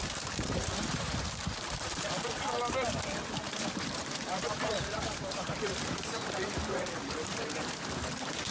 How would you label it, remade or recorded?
remade